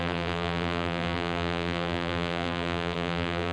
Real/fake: fake